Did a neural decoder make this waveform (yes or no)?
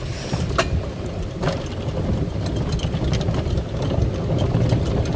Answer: no